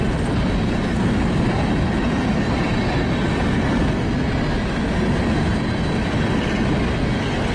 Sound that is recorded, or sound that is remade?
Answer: recorded